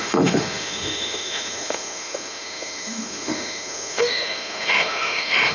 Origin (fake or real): fake